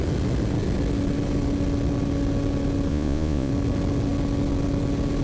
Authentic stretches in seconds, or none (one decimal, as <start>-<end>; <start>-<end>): 0.0-2.9; 3.5-5.2